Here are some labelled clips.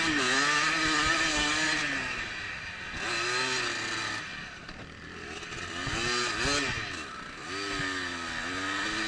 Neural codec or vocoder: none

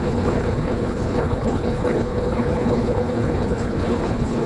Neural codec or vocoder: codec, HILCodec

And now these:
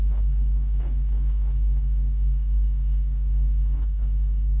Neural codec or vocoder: codec, DAC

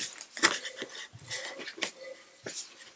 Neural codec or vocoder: none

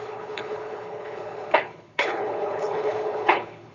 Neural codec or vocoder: codec, HILCodec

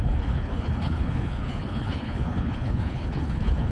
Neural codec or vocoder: codec, HILCodec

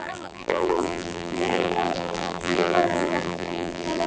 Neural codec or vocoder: vocoder, BigVGAN v2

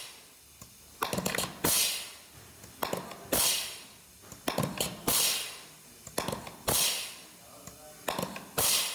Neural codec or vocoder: none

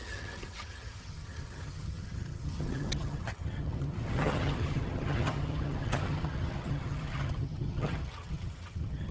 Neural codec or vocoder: vocoder, HiFi-GAN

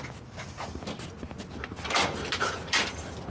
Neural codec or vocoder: none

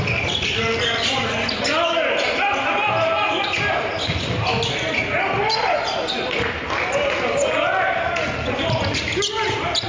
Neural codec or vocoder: none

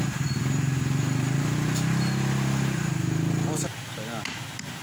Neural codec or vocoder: none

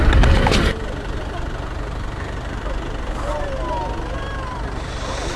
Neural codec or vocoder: none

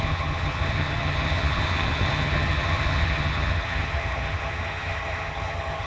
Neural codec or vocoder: vocoder, HiFi-GAN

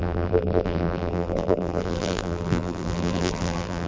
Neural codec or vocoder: vocoder, BigVGAN v2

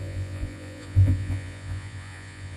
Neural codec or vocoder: vocoder, Vocos